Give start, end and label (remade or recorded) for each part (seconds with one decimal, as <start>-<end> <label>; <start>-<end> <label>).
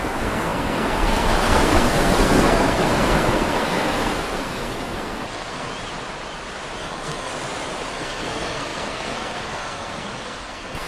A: 0.0-5.7 remade; 5.7-6.8 recorded; 6.8-7.3 remade; 7.3-7.9 recorded; 7.9-10.9 remade